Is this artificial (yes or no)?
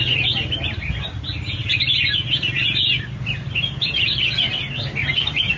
no